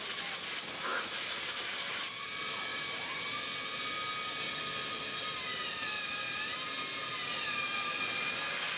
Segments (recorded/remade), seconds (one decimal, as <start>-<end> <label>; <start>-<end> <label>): 0.0-2.7 recorded; 2.7-3.4 remade; 3.4-8.8 recorded